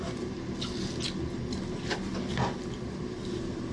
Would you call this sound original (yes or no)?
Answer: yes